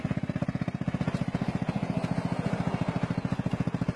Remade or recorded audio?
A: recorded